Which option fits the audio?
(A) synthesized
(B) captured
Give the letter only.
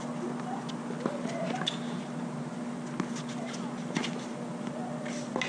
B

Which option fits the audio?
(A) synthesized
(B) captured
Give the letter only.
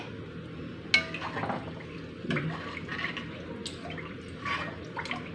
B